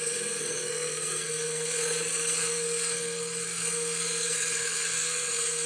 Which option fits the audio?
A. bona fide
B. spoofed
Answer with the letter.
B